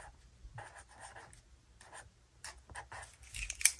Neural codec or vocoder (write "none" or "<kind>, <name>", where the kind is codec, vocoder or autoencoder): none